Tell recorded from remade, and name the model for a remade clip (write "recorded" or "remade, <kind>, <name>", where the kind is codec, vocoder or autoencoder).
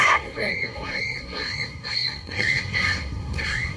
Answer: remade, codec, SNAC